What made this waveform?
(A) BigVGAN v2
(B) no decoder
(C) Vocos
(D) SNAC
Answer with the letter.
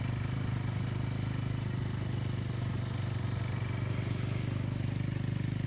B